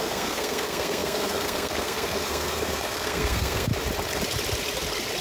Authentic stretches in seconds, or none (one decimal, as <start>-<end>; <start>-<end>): 3.7-5.2